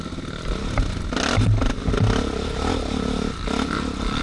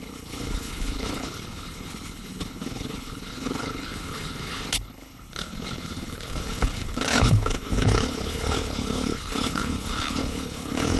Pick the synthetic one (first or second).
second